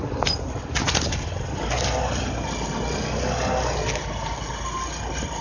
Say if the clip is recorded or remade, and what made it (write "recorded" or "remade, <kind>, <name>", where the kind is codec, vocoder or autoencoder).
recorded